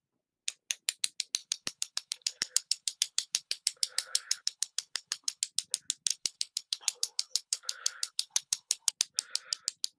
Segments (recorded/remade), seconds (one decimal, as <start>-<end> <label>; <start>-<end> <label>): 0.0-1.4 recorded; 1.4-5.4 remade; 5.4-6.1 recorded; 6.1-8.9 remade; 8.9-10.0 recorded